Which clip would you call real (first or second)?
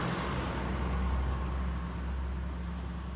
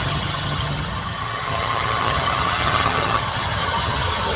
first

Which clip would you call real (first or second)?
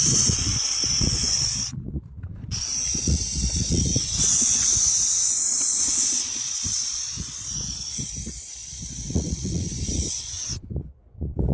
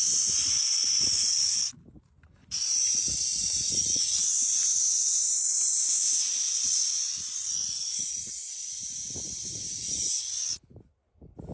second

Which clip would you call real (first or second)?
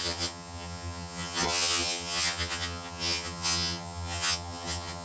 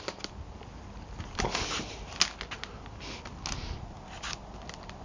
second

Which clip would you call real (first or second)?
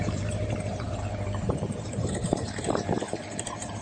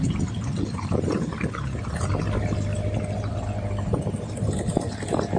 second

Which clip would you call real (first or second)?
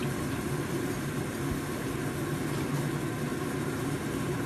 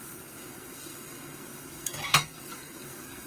first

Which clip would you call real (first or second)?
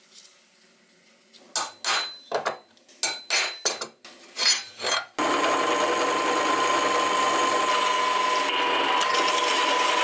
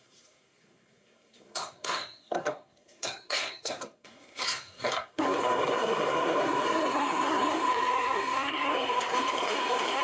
first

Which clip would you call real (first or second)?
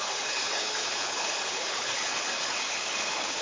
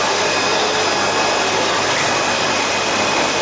second